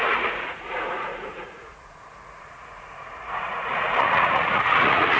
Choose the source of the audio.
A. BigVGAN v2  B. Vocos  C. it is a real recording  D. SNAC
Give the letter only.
B